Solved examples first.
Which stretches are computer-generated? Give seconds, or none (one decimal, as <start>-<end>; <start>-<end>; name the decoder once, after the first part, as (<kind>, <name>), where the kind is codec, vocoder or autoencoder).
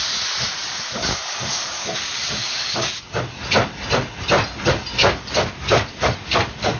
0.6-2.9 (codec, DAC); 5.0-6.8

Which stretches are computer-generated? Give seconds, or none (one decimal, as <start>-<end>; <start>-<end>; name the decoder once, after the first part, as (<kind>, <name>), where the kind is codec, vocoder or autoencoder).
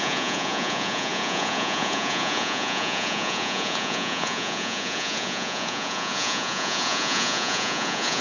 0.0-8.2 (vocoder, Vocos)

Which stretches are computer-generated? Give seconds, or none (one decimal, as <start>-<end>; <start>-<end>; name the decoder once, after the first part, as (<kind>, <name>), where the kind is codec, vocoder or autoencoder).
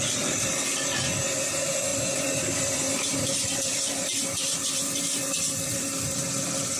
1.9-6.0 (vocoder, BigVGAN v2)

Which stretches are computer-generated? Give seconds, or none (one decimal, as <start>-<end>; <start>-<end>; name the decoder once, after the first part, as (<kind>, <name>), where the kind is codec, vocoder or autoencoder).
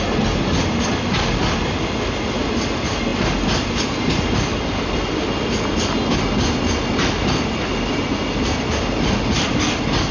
none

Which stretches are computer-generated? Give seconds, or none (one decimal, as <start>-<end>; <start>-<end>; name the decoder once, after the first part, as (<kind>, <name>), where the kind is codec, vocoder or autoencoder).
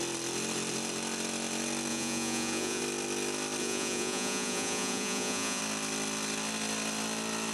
1.9-2.8 (vocoder, Vocos); 3.6-5.6